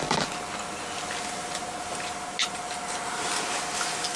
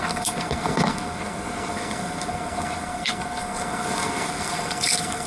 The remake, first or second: second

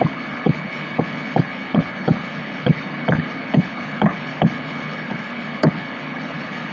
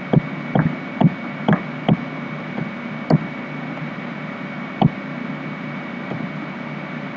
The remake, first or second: first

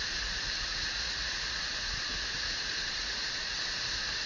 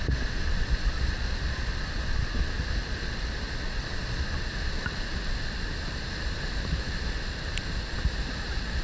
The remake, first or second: first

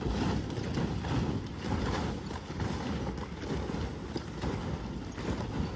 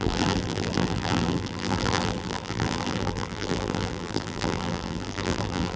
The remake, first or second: second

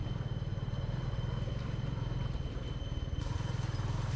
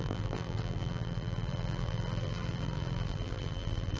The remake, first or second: second